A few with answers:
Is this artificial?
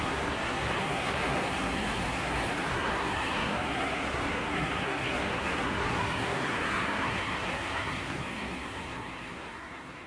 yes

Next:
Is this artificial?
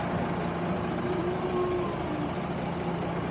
no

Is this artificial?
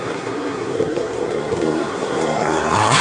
yes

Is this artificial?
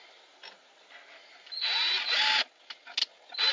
no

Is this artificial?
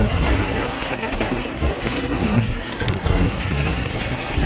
yes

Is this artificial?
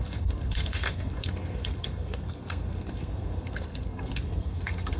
yes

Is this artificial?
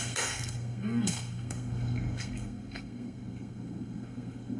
yes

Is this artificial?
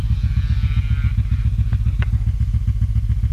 no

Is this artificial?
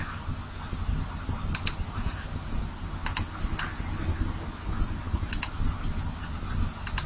no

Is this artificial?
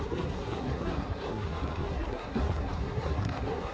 yes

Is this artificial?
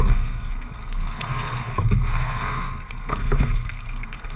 yes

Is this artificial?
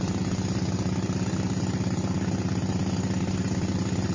no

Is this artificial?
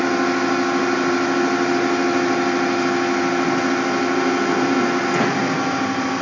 no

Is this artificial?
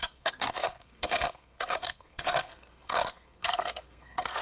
yes